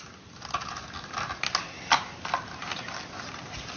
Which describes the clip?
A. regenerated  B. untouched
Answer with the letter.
B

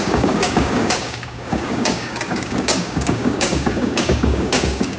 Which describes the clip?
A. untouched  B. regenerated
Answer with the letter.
B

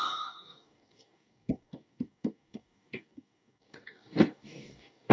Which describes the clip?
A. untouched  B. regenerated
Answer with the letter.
B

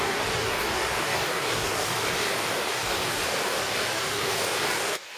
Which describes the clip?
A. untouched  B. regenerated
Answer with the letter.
B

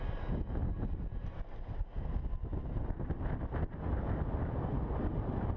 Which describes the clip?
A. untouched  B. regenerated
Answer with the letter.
A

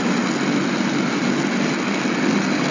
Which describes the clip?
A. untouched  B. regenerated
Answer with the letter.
A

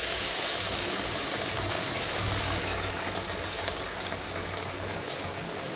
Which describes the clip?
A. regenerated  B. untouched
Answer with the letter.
A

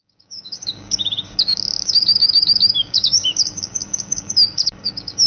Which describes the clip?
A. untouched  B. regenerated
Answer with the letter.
B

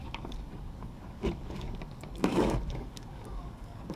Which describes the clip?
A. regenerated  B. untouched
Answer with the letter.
A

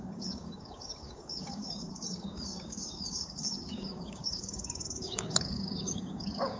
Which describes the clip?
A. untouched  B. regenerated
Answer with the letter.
B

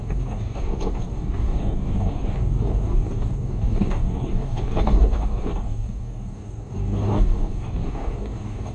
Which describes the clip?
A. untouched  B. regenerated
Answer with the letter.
B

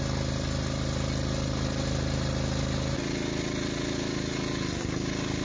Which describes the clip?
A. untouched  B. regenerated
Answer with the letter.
A